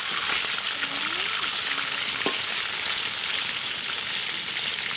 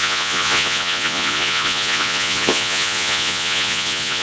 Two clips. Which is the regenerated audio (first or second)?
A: second